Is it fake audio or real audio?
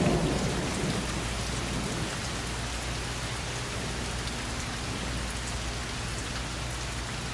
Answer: real